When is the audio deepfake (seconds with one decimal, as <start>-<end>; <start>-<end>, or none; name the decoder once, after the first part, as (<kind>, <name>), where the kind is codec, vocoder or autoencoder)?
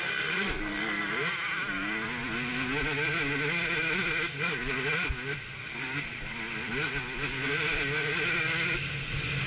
none